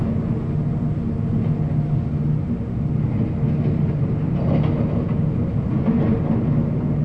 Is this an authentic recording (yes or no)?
yes